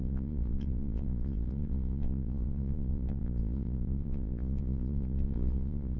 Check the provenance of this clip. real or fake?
fake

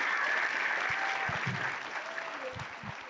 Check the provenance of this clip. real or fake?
real